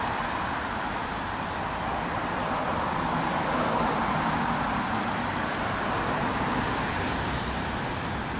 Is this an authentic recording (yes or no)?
no